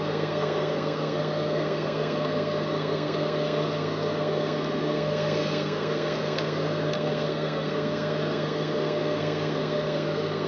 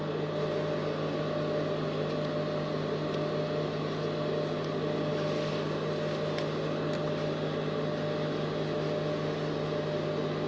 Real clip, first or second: second